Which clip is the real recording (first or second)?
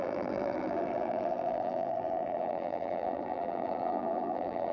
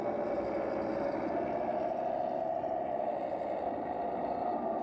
second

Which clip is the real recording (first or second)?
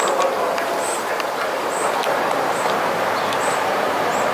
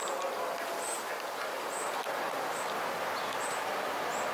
second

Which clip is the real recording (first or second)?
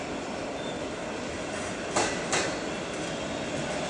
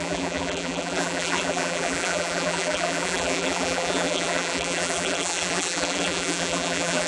first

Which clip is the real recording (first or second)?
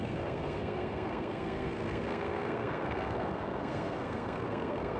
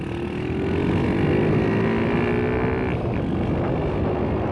second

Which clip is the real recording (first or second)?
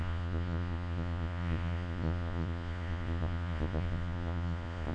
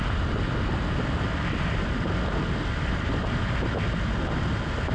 second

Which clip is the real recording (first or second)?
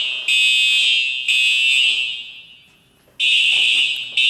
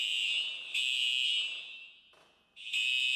first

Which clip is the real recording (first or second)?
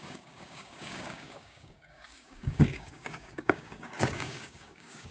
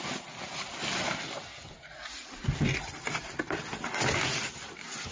second